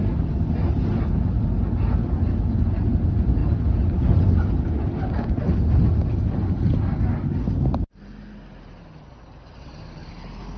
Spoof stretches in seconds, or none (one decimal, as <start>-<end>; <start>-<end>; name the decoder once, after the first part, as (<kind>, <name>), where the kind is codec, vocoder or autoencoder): none